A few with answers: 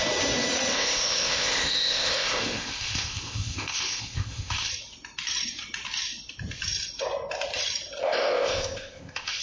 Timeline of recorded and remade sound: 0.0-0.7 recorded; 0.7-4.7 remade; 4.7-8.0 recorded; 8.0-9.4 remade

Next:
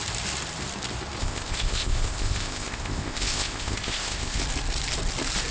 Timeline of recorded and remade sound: 0.0-1.2 recorded; 1.2-4.4 remade; 4.4-5.5 recorded

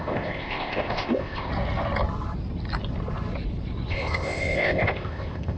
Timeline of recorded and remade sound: 0.0-1.5 remade; 1.5-3.9 recorded; 3.9-5.6 remade

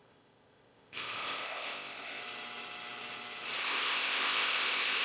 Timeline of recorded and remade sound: 0.0-2.2 remade; 2.2-3.6 recorded; 3.6-5.0 remade

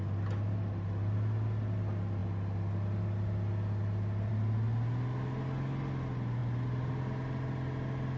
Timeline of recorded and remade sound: 0.0-8.2 recorded